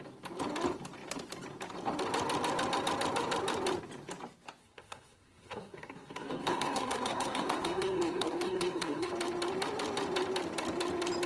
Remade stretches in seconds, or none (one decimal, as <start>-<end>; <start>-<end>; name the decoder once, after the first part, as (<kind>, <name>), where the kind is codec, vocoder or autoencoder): 4.6-9.1 (codec, SNAC)